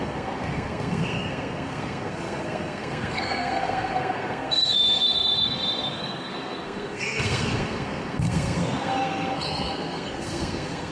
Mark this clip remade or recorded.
remade